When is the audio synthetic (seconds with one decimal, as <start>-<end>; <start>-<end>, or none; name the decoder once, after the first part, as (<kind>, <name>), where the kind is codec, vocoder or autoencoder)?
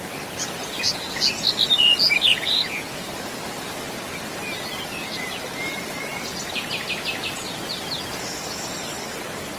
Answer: 2.3-3.1 (vocoder, Vocos)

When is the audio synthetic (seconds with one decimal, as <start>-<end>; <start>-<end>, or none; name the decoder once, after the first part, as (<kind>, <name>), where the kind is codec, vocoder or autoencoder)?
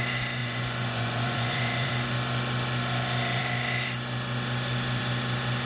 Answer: 0.4-1.9 (vocoder, Vocos)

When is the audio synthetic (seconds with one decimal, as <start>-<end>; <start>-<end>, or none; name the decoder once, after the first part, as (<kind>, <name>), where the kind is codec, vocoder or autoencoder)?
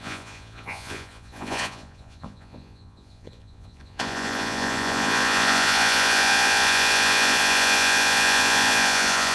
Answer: 0.0-9.3 (vocoder, Vocos)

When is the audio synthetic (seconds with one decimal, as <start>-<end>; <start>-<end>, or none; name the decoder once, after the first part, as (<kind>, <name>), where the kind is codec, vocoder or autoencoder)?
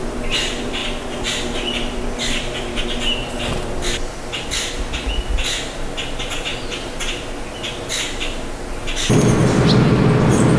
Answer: none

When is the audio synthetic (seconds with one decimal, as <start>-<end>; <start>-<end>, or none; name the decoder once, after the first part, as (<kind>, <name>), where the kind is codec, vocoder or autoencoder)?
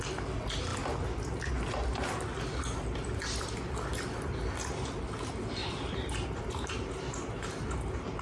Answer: 5.6-6.7 (vocoder, BigVGAN v2)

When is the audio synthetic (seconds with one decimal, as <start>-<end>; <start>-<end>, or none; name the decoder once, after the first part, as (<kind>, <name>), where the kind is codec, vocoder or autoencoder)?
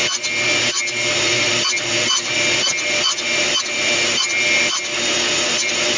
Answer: none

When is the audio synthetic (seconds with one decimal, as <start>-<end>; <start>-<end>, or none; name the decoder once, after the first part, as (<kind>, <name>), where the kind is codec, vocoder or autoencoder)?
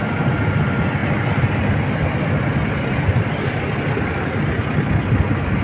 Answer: none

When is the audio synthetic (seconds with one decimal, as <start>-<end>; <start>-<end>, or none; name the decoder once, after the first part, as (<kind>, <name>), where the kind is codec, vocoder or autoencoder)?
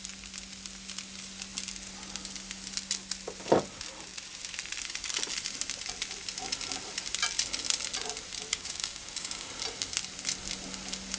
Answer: 8.5-9.5 (codec, DAC)